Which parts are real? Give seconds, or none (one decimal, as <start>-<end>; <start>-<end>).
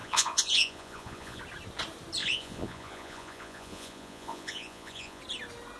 1.4-2.2; 5.2-5.8